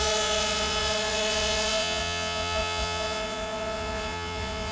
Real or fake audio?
fake